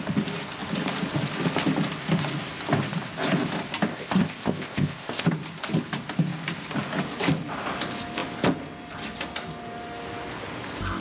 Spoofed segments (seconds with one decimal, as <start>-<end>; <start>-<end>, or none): 3.9-5.2

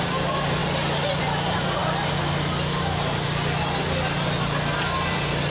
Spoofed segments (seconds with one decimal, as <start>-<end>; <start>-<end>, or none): none

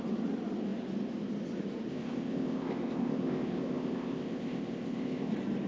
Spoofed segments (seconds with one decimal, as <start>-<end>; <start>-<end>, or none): 1.9-5.3

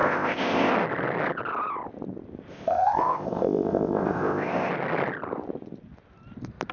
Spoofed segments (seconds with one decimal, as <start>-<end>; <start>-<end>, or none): 0.0-0.7; 2.5-4.7

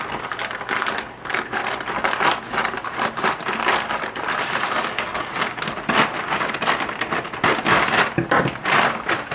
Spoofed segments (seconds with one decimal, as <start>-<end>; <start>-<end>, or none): none

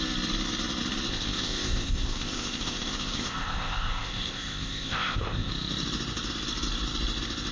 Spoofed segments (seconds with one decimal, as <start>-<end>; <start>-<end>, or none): 1.1-5.5